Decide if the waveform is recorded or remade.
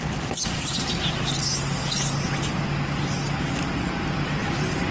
recorded